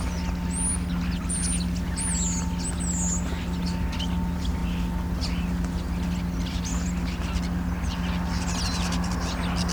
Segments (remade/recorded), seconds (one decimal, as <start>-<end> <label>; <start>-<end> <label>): 0.0-9.7 recorded